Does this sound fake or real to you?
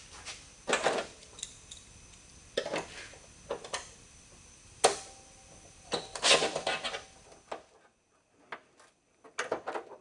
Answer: real